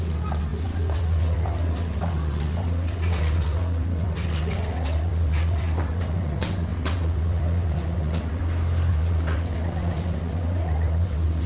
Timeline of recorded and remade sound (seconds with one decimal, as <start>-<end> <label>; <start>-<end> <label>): 0.0-8.4 remade; 8.4-8.9 recorded; 8.9-11.5 remade